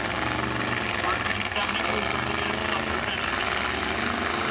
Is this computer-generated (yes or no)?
no